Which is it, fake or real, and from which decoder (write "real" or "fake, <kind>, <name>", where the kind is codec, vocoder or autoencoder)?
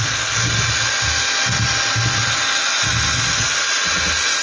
real